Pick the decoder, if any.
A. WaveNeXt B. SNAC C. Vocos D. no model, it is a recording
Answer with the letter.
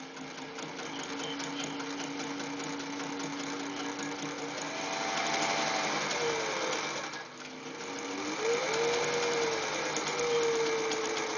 D